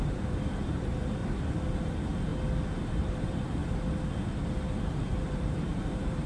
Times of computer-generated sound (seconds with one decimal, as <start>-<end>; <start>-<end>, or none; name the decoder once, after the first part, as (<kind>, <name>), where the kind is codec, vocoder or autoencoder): 0.0-1.2 (vocoder, BigVGAN v2); 1.8-2.3; 2.9-3.6; 5.2-6.3